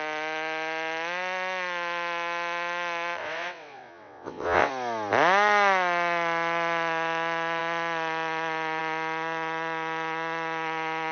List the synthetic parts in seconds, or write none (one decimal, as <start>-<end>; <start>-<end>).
3.2-4.7